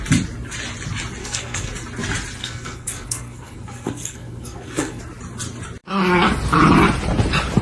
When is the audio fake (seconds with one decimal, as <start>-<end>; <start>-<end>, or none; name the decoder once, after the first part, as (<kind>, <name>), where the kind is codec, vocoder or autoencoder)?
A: 1.2-1.7 (codec, SNAC); 2.4-5.0